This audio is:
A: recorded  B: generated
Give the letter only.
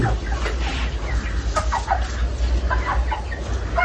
A